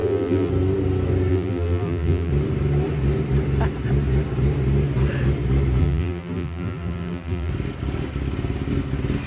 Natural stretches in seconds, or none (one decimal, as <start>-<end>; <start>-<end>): 0.5-1.3; 2.3-5.8; 7.5-9.3